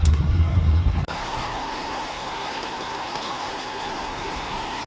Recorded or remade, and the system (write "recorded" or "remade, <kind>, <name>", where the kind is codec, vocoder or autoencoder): remade, codec, SNAC